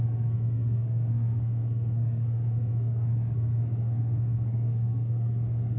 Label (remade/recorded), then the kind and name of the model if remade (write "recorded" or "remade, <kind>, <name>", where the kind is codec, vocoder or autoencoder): remade, codec, SNAC